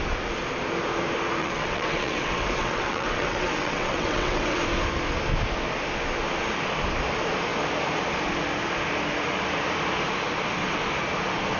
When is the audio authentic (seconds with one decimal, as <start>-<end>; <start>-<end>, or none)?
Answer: 0.0-1.4; 4.6-11.6